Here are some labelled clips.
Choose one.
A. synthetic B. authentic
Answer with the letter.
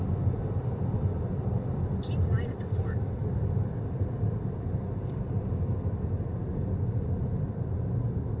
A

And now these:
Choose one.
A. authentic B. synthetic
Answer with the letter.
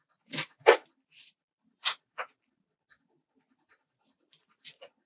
B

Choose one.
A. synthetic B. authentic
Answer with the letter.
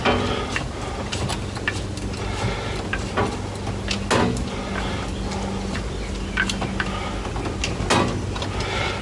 B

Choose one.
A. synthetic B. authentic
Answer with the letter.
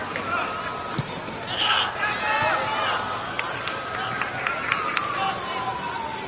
B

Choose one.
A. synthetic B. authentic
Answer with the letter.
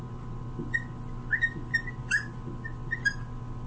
B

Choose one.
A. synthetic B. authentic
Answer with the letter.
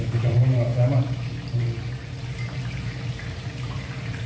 A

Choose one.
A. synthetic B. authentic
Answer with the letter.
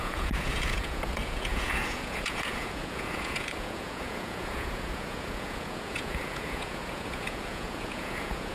A